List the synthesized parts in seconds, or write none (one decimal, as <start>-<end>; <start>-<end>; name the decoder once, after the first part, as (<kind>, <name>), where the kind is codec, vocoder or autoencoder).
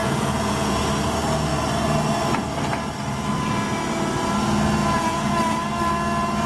0.0-0.8 (vocoder, Vocos); 4.8-5.3